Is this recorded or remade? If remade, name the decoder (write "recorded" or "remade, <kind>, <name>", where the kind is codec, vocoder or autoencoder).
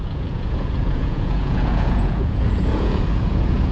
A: remade, vocoder, Vocos